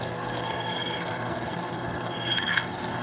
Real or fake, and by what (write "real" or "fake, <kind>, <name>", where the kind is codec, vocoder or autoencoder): fake, codec, SNAC